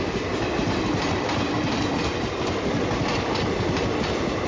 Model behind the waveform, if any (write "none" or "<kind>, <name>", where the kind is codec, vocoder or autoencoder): none